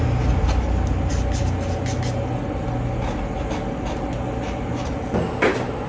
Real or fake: real